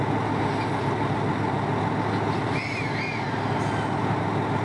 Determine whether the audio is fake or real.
real